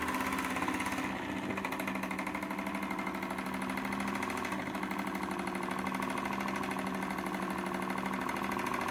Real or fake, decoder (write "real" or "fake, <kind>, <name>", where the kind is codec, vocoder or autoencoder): real